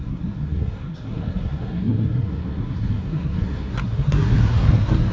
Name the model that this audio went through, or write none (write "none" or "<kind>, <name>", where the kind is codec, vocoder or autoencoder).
codec, SNAC